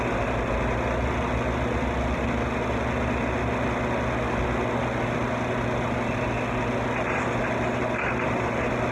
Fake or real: real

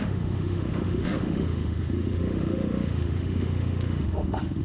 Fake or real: fake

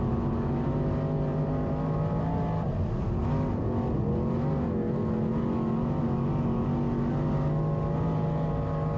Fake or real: real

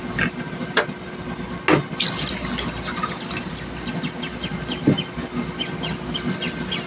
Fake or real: real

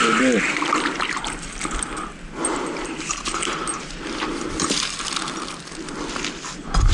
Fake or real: real